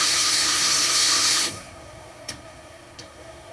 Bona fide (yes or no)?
no